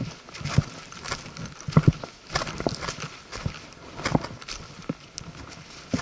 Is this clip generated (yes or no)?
no